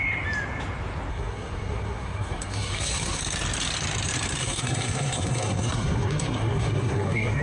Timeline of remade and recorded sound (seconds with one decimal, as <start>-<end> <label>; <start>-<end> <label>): 0.0-1.1 recorded; 1.1-3.2 remade; 3.2-4.4 recorded; 4.4-7.4 remade